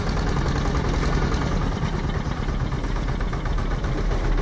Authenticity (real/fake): real